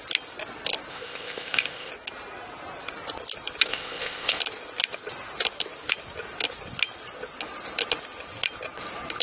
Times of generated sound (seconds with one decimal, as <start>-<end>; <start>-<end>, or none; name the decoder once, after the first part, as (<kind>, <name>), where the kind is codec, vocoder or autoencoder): 0.9-1.9 (codec, ZipCodec); 3.7-4.4